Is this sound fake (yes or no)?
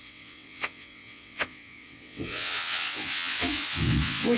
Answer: yes